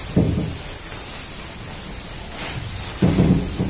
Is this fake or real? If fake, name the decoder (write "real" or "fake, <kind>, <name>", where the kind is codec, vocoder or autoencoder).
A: real